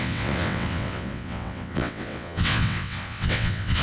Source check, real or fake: fake